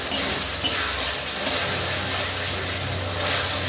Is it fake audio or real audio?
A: real